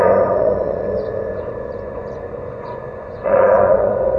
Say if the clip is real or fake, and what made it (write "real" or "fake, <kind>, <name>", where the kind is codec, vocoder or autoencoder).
fake, vocoder, Vocos